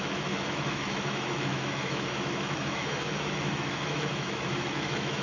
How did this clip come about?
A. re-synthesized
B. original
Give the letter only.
A